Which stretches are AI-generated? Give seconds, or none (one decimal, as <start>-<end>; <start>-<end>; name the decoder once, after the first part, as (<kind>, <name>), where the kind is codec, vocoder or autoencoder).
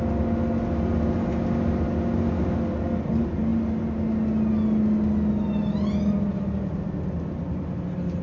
none